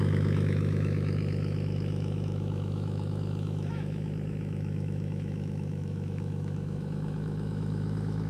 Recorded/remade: remade